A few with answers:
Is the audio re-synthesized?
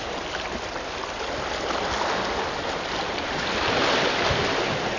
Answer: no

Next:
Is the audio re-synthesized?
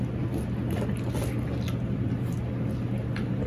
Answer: no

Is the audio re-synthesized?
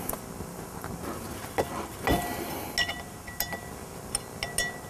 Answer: no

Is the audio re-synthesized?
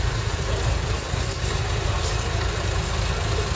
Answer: no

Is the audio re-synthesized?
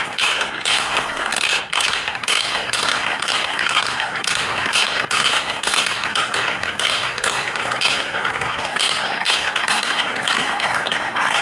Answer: yes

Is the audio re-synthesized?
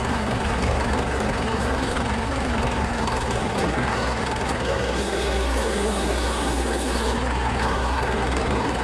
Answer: yes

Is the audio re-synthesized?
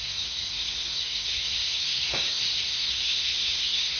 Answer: yes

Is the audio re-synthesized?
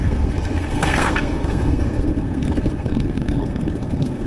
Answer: yes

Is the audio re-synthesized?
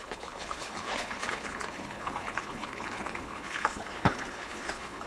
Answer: yes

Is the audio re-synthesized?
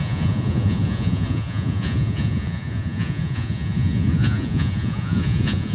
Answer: yes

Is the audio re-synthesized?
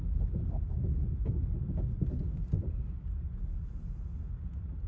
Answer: no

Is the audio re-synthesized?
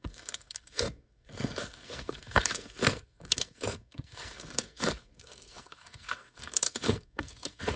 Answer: yes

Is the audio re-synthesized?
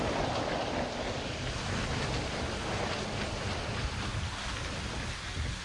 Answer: no